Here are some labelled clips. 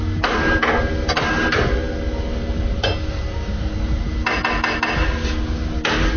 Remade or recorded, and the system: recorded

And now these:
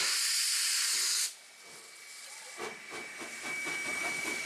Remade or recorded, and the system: recorded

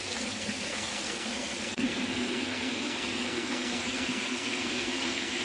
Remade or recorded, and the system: remade, codec, SNAC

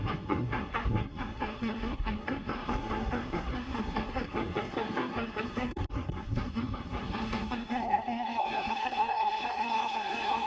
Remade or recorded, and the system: remade, codec, SNAC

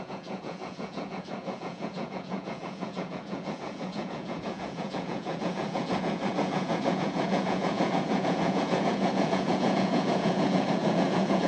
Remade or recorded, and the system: remade, vocoder, Vocos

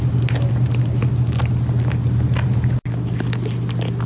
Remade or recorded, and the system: recorded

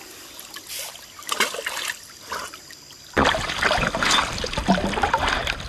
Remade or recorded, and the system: recorded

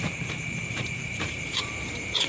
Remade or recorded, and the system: remade, vocoder, BigVGAN v2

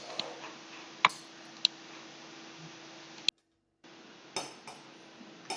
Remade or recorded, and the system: recorded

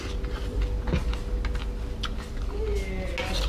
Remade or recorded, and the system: recorded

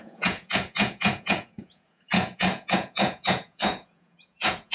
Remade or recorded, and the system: remade, vocoder, Vocos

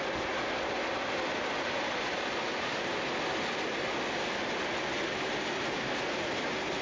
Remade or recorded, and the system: recorded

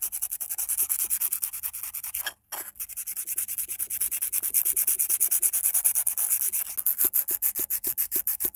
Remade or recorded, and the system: recorded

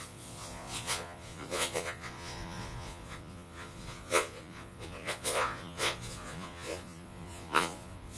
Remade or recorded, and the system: remade, vocoder, Vocos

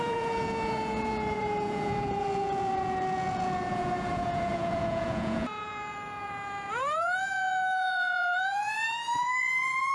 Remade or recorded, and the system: remade, vocoder, Vocos